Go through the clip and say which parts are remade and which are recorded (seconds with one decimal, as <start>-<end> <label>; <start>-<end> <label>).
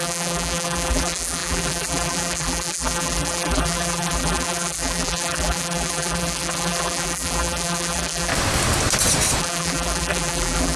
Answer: 0.0-8.3 remade; 8.3-9.4 recorded; 9.4-10.8 remade